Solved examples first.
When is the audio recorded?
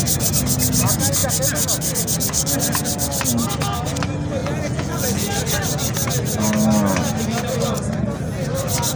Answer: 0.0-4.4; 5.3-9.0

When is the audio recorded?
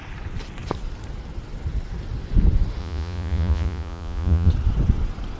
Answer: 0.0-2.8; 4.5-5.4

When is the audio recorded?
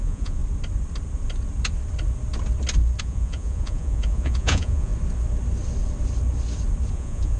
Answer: 0.4-3.0; 4.9-6.9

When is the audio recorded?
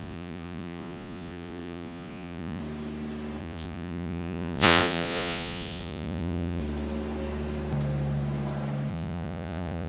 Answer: 2.6-3.4; 6.6-8.9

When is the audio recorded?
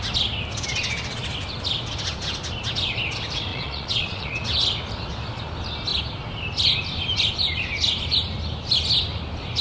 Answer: 0.0-3.5; 4.3-9.6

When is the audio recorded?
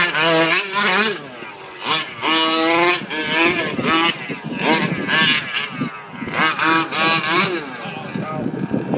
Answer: 0.0-9.0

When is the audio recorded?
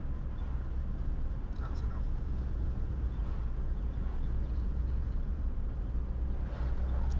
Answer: 0.0-1.6; 5.4-7.2